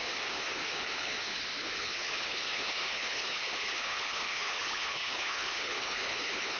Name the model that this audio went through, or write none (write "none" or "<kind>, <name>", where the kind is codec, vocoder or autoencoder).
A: codec, HILCodec